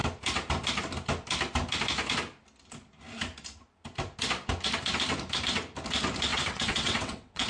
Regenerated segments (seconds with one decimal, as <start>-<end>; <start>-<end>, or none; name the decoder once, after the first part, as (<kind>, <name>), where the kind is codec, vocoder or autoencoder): 6.3-7.5 (vocoder, WaveNeXt)